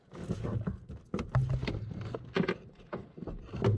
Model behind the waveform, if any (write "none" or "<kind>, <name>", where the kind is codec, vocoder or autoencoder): none